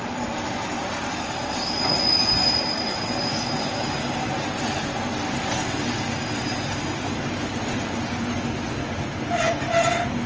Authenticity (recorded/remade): recorded